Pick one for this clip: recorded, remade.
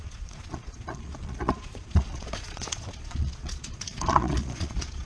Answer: remade